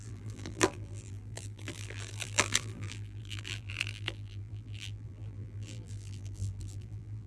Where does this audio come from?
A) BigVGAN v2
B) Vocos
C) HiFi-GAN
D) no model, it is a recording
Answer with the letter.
A